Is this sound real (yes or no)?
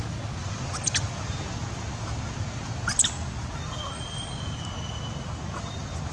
yes